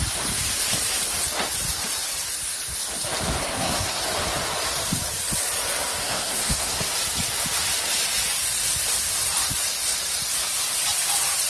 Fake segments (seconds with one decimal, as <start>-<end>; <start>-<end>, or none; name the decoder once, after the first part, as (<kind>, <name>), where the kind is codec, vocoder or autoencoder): 3.4-4.0 (codec, SNAC); 6.0-6.9